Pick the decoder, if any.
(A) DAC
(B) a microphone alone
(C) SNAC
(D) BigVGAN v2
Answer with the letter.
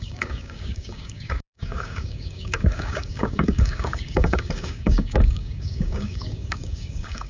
A